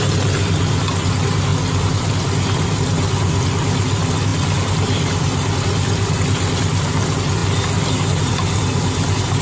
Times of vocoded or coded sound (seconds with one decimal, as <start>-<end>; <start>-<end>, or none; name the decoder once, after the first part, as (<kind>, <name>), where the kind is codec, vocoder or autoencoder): none